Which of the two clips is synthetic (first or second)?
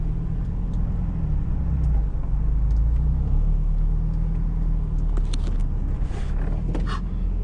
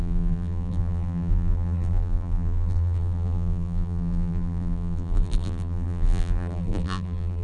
second